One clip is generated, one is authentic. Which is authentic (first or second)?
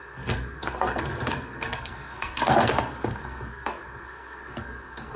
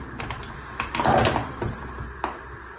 second